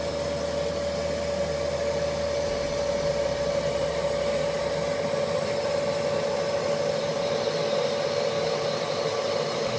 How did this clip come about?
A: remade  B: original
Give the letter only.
B